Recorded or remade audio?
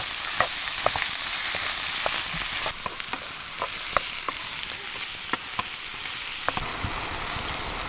recorded